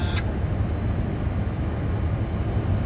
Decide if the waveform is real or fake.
real